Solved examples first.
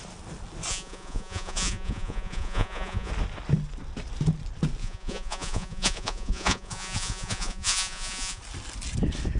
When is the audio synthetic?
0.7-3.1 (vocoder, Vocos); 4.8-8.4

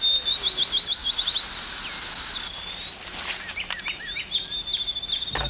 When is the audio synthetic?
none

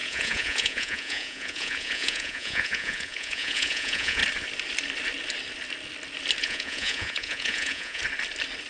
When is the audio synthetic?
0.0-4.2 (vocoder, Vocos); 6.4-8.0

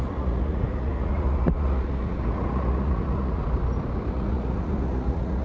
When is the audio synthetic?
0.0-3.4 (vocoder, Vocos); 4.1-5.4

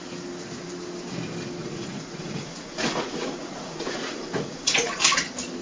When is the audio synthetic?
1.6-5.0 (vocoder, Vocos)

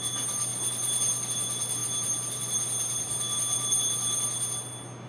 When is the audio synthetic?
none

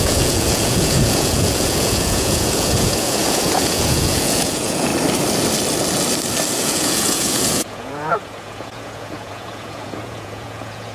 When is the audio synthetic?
0.0-4.9 (vocoder, Vocos); 6.6-10.9